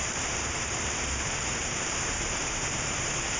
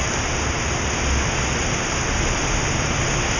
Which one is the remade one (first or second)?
first